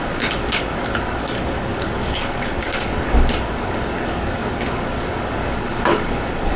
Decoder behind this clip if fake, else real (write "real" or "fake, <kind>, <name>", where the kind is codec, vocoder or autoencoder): fake, codec, DAC